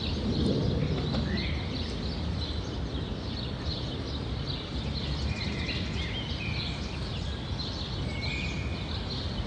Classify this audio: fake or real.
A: real